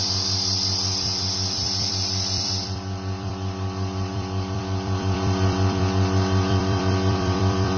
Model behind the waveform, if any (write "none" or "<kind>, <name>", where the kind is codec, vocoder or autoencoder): vocoder, BigVGAN v2